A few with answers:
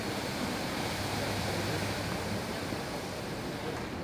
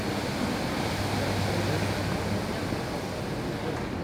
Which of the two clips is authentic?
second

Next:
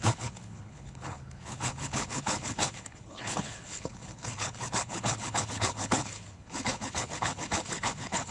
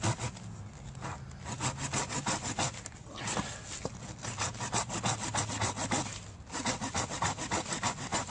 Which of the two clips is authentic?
second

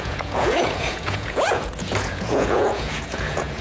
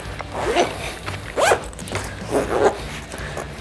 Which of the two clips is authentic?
second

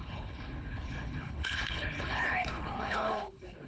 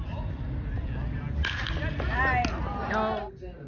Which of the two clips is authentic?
second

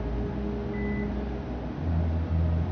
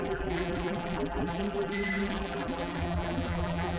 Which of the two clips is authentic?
first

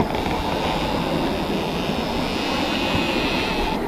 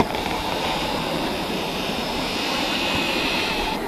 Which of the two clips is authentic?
first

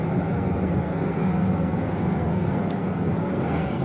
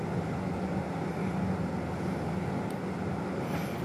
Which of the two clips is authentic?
second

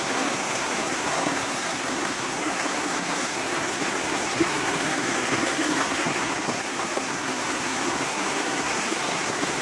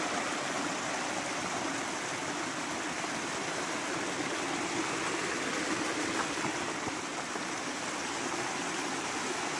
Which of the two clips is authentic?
second